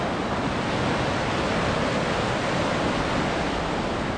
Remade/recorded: recorded